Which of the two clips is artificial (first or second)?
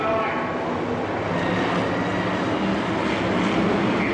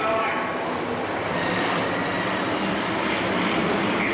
second